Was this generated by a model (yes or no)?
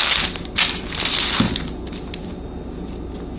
no